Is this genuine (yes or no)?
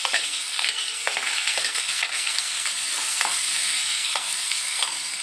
no